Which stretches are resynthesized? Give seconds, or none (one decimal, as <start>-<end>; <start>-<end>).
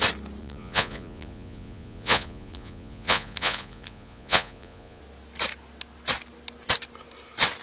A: 0.4-5.0